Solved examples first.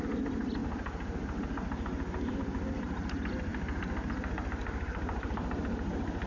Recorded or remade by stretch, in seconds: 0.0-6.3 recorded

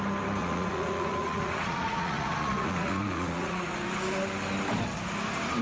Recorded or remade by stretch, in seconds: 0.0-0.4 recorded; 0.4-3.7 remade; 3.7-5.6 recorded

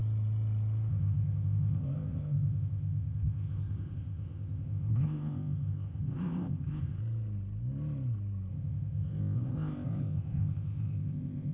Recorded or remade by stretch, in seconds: 0.0-0.9 recorded; 0.9-7.0 remade; 7.0-8.5 recorded; 8.5-11.5 remade

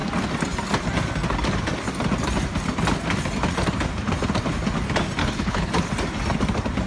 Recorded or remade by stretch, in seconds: 0.0-5.2 recorded; 5.2-5.7 remade; 5.7-6.9 recorded

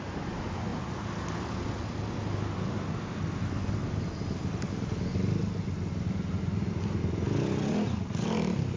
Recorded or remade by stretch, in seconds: 0.0-8.8 recorded

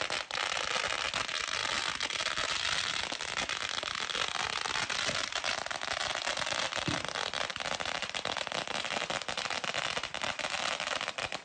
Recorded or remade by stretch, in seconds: 0.0-11.4 recorded

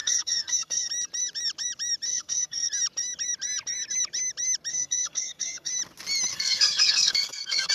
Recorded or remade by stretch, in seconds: 0.0-0.9 remade; 0.9-2.1 recorded; 2.1-2.7 remade; 2.7-4.7 recorded; 4.7-5.7 remade; 5.7-6.3 recorded; 6.3-7.7 remade